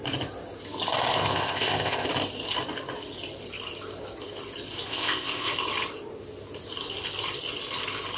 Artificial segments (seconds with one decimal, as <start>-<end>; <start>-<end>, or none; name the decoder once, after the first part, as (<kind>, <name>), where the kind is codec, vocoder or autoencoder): 1.1-2.1 (codec, ZipCodec); 4.9-5.5